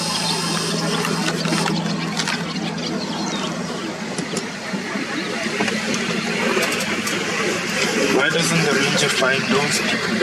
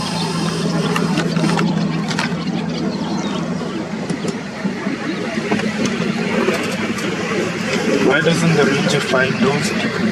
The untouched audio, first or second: first